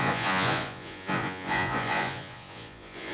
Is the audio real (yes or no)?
no